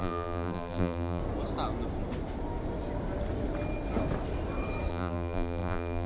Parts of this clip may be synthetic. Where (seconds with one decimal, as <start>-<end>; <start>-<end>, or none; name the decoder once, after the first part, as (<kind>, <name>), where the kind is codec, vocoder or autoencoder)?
0.0-1.2 (vocoder, BigVGAN v2); 4.9-6.1

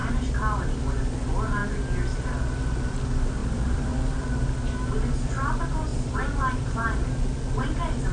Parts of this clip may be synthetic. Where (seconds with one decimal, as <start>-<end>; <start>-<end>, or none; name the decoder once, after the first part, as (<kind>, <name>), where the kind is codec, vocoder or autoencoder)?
3.4-3.9 (vocoder, BigVGAN v2); 5.9-7.1